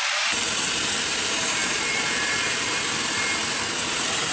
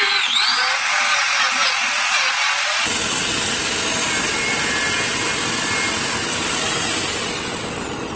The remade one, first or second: first